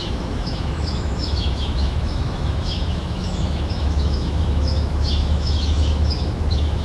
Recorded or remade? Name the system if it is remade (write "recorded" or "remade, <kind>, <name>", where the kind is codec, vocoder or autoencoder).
remade, autoencoder, DAC-VAE